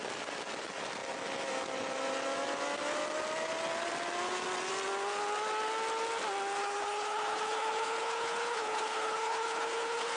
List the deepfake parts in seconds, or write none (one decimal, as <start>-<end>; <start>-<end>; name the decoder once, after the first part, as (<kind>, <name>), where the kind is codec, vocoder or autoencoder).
6.6-10.2 (codec, HILCodec)